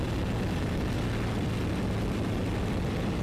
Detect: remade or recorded recorded